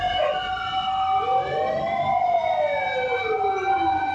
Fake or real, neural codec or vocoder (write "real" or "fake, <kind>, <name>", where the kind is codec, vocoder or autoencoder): real